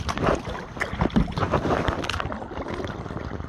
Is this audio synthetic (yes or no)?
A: no